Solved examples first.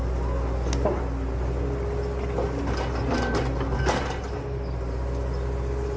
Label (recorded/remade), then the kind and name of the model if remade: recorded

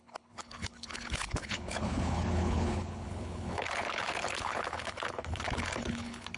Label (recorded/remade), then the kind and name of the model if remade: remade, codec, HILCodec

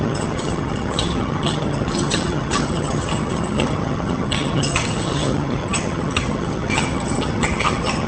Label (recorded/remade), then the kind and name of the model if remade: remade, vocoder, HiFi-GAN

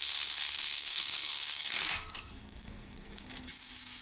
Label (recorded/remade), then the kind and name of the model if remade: remade, codec, SNAC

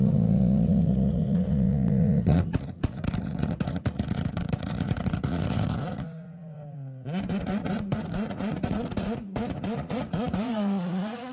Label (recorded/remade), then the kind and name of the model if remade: remade, vocoder, Vocos